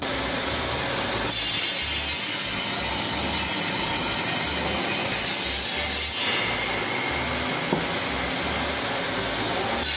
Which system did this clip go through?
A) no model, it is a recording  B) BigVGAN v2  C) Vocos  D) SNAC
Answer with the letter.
A